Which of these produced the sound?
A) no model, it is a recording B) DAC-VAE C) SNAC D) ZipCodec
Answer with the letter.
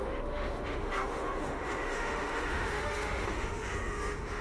B